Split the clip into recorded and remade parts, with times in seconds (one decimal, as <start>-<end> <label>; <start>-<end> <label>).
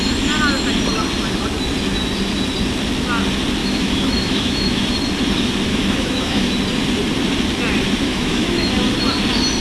0.0-3.6 recorded; 3.6-4.8 remade; 4.8-5.7 recorded; 5.7-6.5 remade; 6.5-8.1 recorded; 8.1-8.7 remade; 8.7-9.6 recorded